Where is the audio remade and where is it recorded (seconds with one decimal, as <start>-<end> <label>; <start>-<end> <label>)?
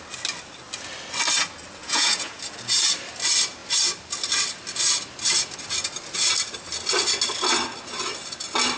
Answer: 0.0-1.8 recorded; 1.8-2.4 remade; 2.4-8.8 recorded